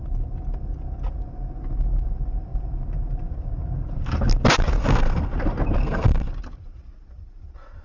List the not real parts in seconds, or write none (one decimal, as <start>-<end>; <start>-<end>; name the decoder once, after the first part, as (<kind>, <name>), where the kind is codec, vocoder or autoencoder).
4.8-5.3 (codec, SNAC); 5.8-6.3